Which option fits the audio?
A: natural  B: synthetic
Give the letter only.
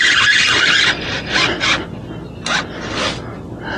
A